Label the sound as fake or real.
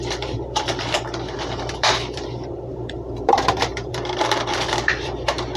fake